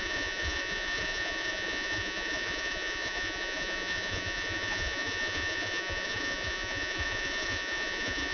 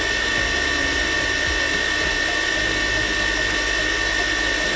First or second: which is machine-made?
first